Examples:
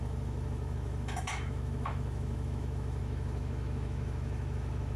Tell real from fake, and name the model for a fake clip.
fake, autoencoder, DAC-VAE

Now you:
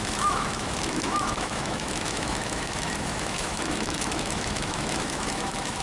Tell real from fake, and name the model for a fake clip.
fake, autoencoder, DAC-VAE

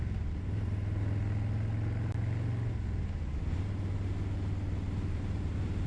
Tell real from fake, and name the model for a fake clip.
real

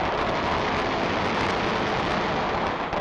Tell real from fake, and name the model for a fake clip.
real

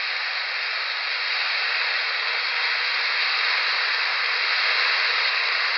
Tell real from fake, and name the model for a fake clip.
real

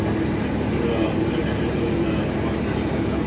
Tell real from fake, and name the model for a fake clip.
real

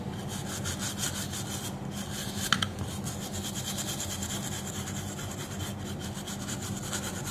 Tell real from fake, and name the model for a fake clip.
real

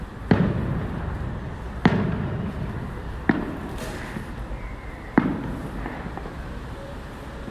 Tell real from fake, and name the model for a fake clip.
fake, vocoder, BigVGAN v2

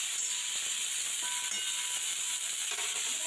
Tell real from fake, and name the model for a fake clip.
real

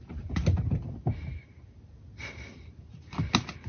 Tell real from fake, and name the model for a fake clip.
real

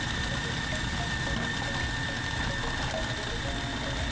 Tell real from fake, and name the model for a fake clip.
real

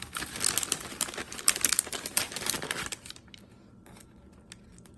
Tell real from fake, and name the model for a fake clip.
real